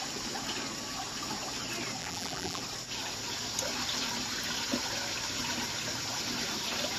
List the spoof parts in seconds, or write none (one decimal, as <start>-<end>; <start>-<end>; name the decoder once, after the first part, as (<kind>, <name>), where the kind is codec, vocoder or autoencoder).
2.0-2.6 (vocoder, BigVGAN v2)